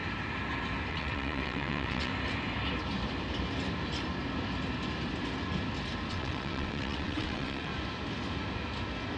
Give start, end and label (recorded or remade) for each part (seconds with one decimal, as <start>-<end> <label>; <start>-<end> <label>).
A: 0.0-0.9 recorded; 0.9-2.1 remade; 2.1-6.1 recorded; 6.1-7.7 remade; 7.7-9.2 recorded